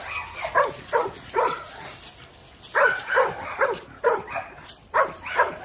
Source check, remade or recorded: recorded